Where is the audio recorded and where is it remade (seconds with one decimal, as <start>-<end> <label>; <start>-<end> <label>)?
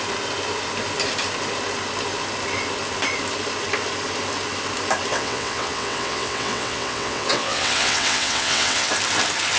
0.0-5.1 recorded; 5.1-8.9 remade; 8.9-9.6 recorded